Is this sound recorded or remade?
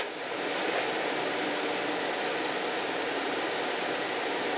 recorded